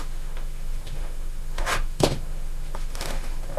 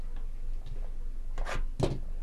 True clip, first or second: second